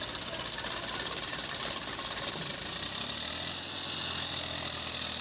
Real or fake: real